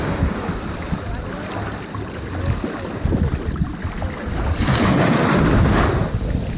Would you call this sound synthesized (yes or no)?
no